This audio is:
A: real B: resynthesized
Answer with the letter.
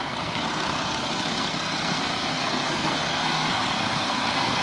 B